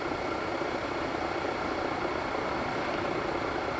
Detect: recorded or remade recorded